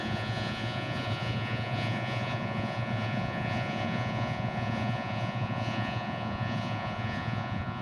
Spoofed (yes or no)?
yes